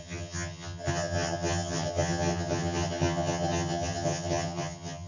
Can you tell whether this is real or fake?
fake